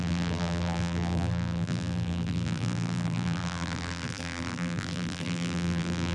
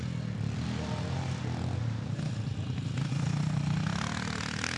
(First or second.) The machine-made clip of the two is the first